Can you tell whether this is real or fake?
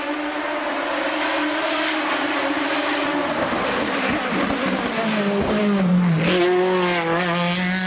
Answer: real